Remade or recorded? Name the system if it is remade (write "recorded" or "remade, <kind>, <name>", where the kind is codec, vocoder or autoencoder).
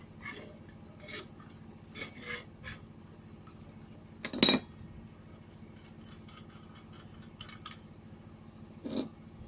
recorded